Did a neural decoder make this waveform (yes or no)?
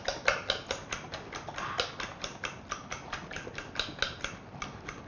no